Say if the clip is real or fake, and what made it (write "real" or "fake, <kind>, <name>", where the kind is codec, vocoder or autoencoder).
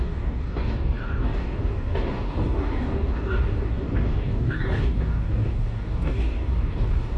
fake, codec, DAC